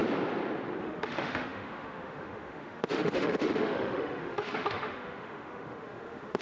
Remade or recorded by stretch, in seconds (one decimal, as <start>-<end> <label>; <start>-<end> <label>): 0.0-0.8 recorded; 0.8-6.4 remade

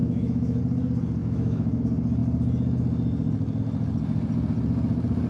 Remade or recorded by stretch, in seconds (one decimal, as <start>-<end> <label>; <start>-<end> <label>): 0.0-0.6 remade; 0.6-1.2 recorded; 1.2-1.8 remade; 1.8-5.3 recorded

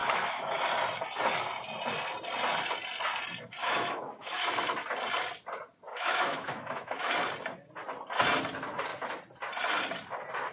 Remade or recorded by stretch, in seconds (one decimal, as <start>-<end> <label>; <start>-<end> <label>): 0.0-0.6 remade; 0.6-3.6 recorded; 3.6-4.5 remade; 4.5-5.9 recorded; 5.9-7.1 remade; 7.1-10.5 recorded

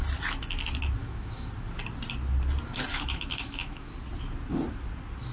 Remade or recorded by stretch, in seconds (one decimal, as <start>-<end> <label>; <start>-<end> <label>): 0.0-1.0 recorded; 1.0-1.5 remade; 1.5-2.9 recorded; 2.9-3.9 remade; 3.9-5.3 recorded

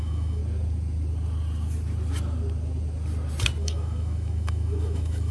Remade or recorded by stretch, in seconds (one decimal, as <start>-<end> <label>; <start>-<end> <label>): 0.0-0.4 remade; 0.4-3.6 recorded; 3.6-5.3 remade

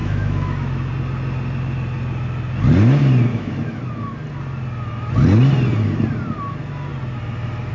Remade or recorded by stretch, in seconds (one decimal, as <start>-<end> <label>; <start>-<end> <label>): 0.0-0.9 remade; 0.9-3.3 recorded; 3.3-3.8 remade; 3.8-7.7 recorded

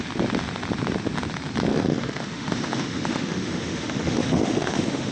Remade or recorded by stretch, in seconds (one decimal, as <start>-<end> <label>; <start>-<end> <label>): 0.0-1.7 recorded; 1.7-5.1 remade

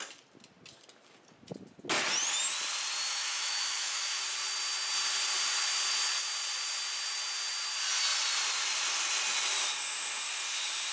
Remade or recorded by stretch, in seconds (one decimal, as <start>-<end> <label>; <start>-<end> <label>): 0.0-3.1 recorded; 3.1-4.2 remade; 4.2-10.9 recorded